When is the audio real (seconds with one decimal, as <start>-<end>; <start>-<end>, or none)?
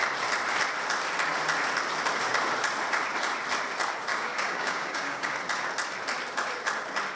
0.0-4.1; 5.3-7.2